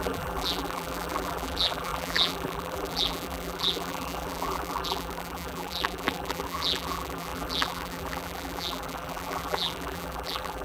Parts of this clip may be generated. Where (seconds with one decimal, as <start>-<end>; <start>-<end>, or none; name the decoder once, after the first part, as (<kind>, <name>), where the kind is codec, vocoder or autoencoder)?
0.0-10.6 (vocoder, BigVGAN v2)